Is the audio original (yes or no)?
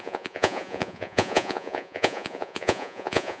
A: no